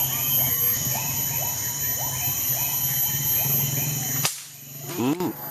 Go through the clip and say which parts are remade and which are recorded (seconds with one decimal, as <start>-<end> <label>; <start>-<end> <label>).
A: 0.0-0.5 recorded; 0.5-1.0 remade; 1.0-5.5 recorded